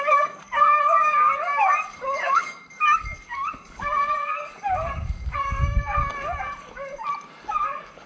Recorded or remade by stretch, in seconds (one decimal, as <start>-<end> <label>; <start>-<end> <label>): 0.0-6.9 remade; 6.9-7.5 recorded; 7.5-8.1 remade